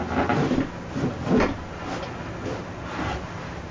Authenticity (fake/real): real